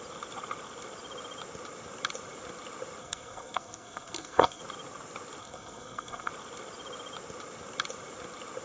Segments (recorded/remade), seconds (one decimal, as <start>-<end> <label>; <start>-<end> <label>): 0.0-3.0 recorded; 3.0-4.6 remade; 4.6-5.4 recorded; 5.4-6.3 remade; 6.3-8.6 recorded